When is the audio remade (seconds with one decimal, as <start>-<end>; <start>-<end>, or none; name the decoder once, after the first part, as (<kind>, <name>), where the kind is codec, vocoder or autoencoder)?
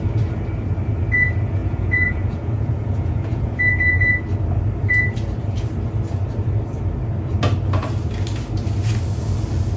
1.6-3.6 (vocoder, Vocos)